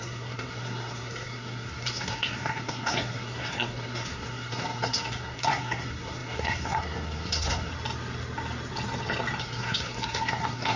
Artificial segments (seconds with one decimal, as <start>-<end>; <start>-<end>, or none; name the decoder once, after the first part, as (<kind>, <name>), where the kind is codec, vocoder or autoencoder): 0.0-7.7 (codec, SNAC); 9.4-10.8